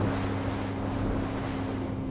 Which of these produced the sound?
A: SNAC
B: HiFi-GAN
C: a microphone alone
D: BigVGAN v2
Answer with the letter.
C